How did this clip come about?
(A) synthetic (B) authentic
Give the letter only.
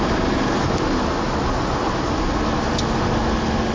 B